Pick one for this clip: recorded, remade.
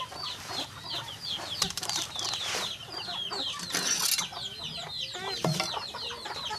recorded